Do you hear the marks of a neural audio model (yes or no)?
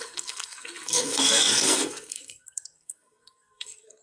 yes